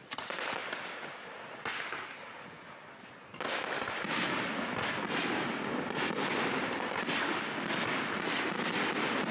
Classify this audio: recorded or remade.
recorded